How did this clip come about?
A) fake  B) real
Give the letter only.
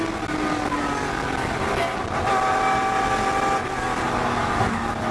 B